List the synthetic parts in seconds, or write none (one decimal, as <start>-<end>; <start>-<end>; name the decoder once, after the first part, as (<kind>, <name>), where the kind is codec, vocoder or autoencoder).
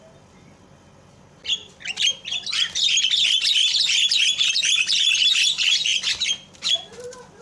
1.6-4.5 (vocoder, BigVGAN v2); 5.9-6.7